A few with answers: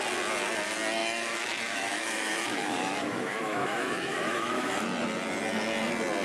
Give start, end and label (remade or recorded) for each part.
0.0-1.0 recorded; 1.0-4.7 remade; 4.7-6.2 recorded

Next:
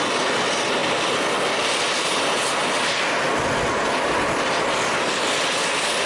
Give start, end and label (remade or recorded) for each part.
0.0-6.1 recorded

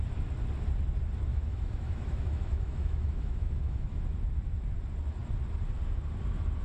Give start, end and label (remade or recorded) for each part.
0.0-1.3 recorded; 1.3-4.0 remade; 4.0-6.6 recorded

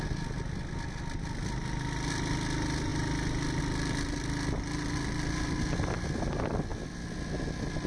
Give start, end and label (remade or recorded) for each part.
0.0-7.9 recorded